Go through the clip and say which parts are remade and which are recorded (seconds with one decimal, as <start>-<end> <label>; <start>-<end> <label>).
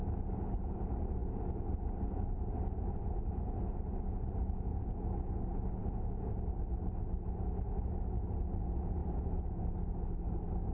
0.0-10.7 recorded